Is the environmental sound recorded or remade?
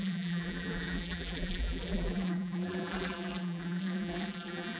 remade